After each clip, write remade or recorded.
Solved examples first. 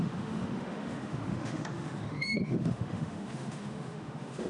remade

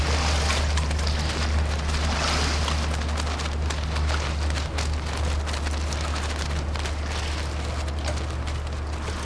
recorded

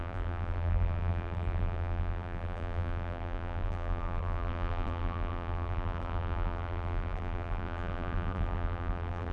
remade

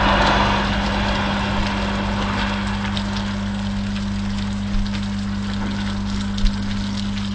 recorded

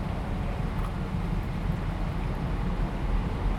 recorded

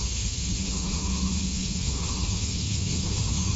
remade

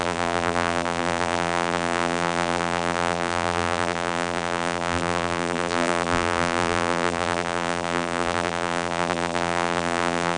remade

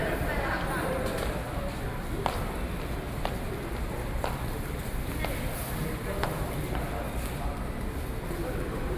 recorded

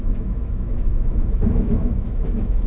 remade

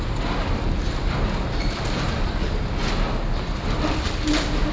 recorded